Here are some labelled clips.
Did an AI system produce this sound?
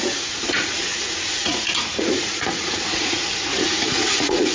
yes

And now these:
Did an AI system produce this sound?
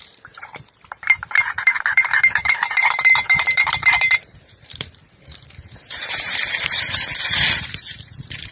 yes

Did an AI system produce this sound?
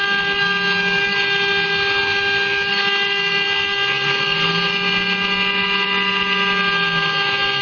no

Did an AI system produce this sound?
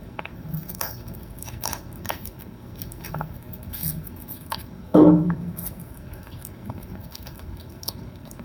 yes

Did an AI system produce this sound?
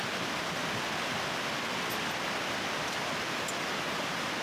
no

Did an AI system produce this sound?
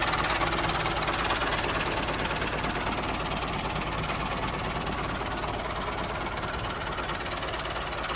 no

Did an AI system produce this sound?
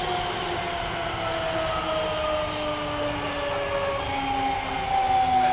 no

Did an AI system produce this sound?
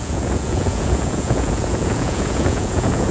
yes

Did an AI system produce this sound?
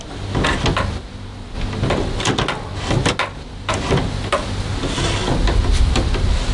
no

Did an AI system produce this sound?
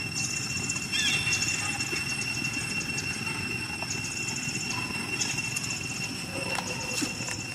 no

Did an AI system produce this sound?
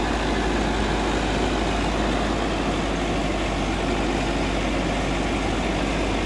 no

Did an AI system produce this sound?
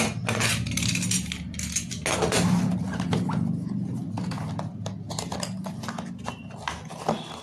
no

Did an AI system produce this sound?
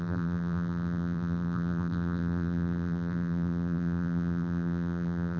yes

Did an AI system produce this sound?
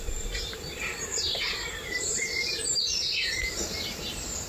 yes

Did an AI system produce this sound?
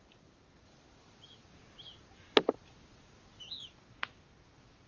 no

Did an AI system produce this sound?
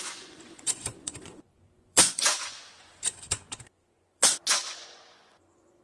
yes